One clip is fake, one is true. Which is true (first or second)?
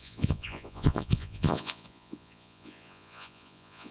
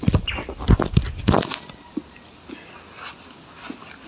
second